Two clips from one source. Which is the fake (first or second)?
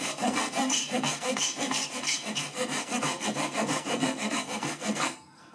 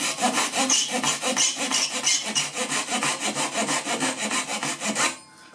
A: first